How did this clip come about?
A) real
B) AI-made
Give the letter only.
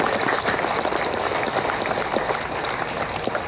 A